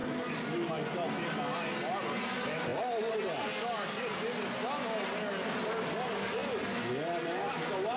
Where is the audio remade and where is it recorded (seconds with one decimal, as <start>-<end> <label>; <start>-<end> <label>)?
0.0-8.0 recorded